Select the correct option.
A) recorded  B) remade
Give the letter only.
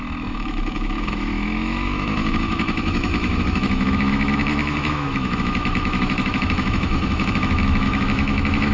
B